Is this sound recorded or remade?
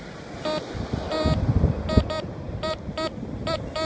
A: recorded